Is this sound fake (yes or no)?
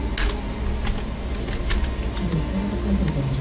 no